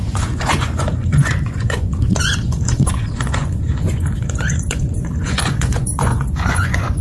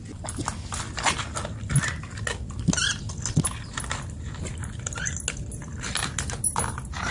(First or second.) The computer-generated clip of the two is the first